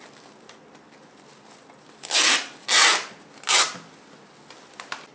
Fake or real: real